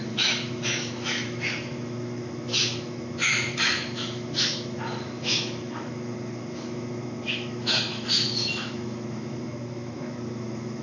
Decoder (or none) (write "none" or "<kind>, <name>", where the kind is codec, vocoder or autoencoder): autoencoder, DAC-VAE